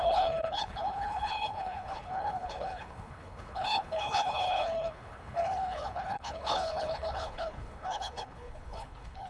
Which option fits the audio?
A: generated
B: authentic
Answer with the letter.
A